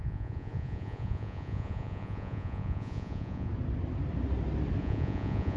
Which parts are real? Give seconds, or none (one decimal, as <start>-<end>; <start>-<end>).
3.5-4.8

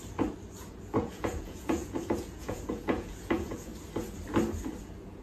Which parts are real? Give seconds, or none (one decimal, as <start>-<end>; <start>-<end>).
0.0-0.7; 3.7-4.8

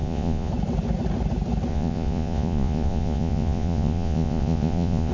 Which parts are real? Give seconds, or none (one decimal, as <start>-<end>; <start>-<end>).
0.5-1.7

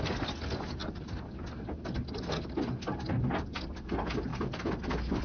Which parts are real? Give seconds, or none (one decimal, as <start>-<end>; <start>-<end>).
0.0-5.2

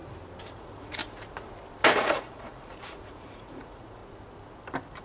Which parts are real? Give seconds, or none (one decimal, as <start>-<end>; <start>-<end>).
0.0-0.5; 1.0-2.0; 4.0-5.0

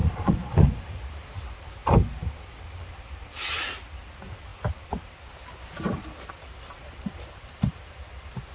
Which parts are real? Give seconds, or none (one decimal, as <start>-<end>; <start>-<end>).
0.8-8.5

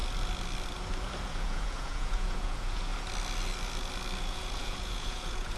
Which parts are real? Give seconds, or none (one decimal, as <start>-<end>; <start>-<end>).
0.0-1.3; 2.9-4.2

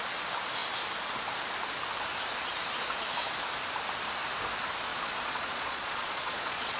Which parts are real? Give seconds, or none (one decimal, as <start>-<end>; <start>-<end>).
0.0-4.9